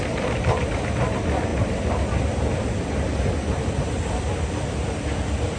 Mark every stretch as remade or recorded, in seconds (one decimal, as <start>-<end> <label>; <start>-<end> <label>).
0.0-5.6 recorded

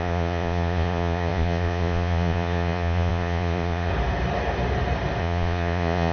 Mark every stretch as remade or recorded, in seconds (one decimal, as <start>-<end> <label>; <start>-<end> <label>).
0.0-3.9 remade; 3.9-5.2 recorded; 5.2-6.1 remade

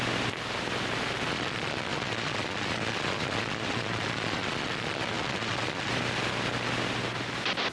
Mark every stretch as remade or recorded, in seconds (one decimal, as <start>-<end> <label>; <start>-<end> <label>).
0.0-1.3 recorded; 1.3-5.9 remade; 5.9-7.7 recorded

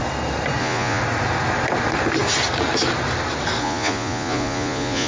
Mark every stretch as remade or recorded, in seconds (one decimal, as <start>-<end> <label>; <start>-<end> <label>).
0.0-0.6 recorded; 0.6-1.0 remade; 1.0-3.6 recorded; 3.6-5.1 remade

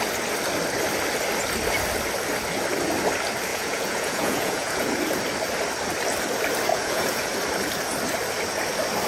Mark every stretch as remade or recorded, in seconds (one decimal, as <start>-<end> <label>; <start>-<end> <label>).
0.0-3.5 recorded; 3.5-4.9 remade; 4.9-6.7 recorded; 6.7-7.3 remade; 7.3-9.1 recorded

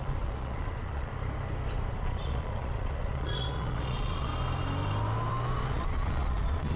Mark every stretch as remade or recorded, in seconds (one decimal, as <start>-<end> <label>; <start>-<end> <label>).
0.0-1.1 remade; 1.1-1.9 recorded; 1.9-4.3 remade; 4.3-5.7 recorded; 5.7-6.8 remade

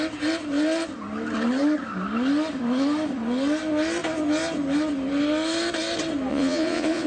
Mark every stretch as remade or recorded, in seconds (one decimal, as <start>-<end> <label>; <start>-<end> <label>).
0.0-6.3 recorded; 6.3-7.1 remade